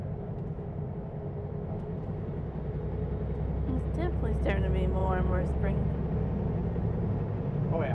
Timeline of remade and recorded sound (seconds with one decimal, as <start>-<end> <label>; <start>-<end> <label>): 0.0-5.0 recorded; 5.0-5.7 remade; 5.7-6.6 recorded; 6.6-7.3 remade; 7.3-7.9 recorded